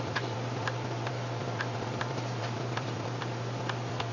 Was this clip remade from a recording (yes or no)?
yes